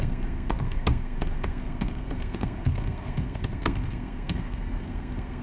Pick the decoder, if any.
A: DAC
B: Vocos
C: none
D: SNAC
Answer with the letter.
D